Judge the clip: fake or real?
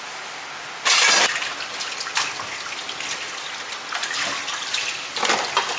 real